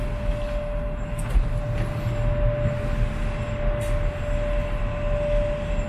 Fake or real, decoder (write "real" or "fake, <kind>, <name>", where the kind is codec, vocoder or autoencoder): real